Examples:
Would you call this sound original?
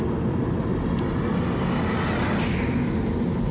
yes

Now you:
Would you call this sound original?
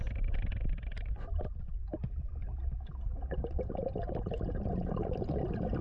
yes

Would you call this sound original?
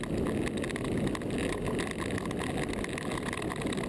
yes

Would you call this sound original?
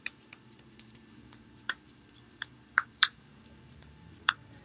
no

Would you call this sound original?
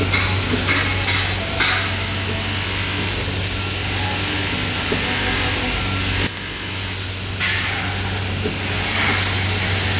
yes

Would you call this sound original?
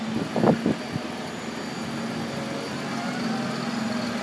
yes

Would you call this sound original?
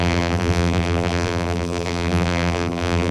no